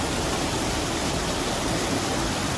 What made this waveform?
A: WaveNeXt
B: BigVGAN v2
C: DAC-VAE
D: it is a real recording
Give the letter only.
D